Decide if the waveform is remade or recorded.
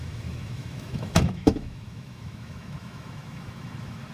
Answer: remade